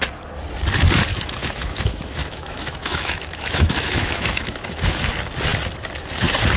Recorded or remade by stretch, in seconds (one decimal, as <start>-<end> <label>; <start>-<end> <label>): 0.0-1.1 recorded; 1.1-5.1 remade; 5.1-6.6 recorded